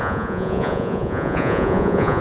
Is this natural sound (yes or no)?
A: no